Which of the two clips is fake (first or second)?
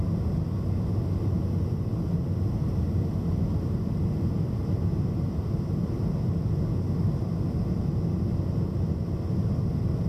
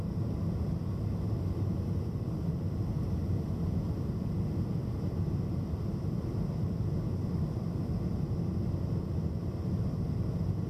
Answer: second